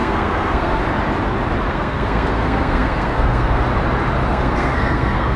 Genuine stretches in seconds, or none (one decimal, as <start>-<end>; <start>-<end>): 0.8-1.7; 3.6-4.3